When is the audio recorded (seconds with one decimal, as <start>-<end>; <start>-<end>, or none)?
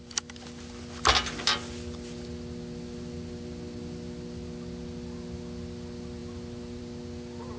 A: 0.0-7.6